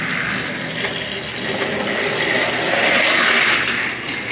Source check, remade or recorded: recorded